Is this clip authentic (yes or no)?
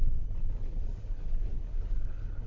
no